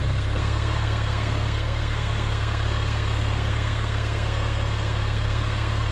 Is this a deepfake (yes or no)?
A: yes